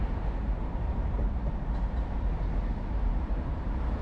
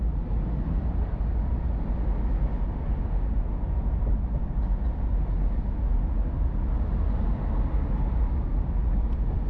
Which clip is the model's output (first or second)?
first